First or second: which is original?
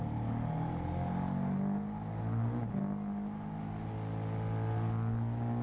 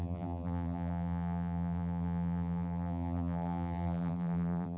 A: first